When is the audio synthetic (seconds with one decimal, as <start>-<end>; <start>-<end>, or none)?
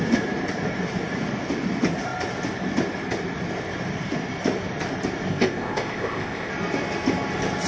5.3-6.5